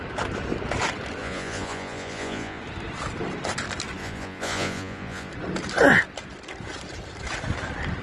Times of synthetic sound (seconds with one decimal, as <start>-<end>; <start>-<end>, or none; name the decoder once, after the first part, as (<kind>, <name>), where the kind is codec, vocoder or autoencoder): 1.2-2.6 (vocoder, Vocos); 4.0-5.3